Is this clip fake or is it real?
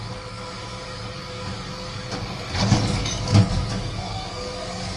fake